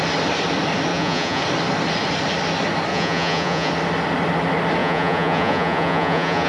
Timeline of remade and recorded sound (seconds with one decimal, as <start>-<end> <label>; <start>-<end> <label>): 0.0-0.9 recorded; 0.9-1.4 remade; 1.4-2.9 recorded; 2.9-3.7 remade; 3.7-4.8 recorded; 4.8-6.5 remade